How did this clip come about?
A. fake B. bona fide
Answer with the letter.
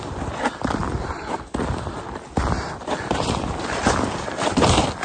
B